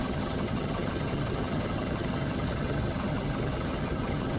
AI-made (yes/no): yes